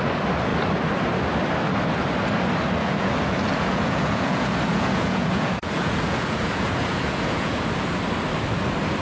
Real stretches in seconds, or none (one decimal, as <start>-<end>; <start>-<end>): 0.0-2.8; 7.7-9.0